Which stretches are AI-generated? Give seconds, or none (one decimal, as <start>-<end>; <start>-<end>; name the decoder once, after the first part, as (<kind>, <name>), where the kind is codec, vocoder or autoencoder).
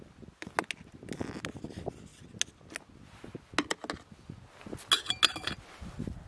none